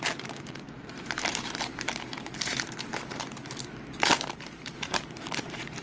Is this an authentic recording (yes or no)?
no